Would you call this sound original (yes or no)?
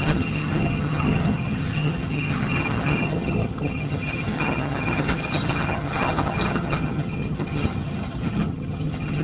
no